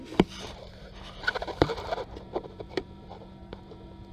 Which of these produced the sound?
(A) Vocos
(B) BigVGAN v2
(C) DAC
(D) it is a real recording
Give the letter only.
B